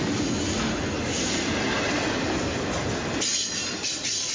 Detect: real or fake real